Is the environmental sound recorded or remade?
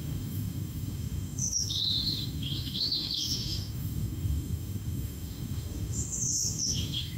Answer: remade